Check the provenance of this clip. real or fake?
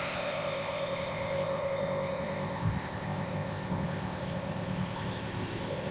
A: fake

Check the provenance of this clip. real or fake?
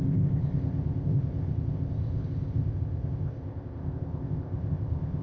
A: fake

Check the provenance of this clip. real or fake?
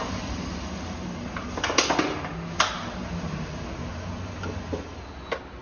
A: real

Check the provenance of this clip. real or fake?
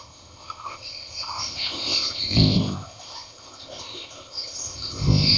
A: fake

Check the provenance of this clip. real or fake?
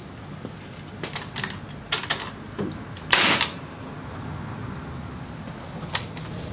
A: real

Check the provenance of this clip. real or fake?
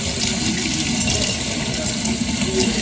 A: real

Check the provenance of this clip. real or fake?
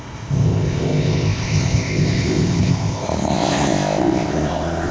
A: fake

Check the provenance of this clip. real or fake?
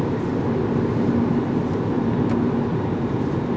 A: real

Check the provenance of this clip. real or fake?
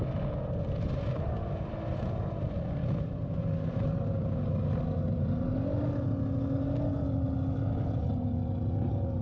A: real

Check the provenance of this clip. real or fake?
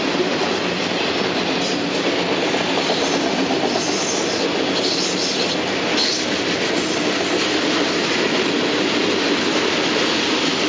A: real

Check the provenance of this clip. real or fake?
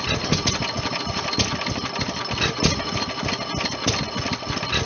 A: real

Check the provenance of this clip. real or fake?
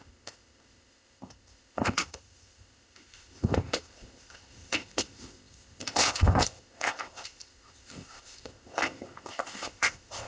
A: fake